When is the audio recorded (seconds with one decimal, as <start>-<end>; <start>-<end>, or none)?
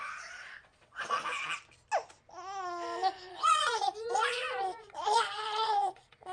1.2-3.3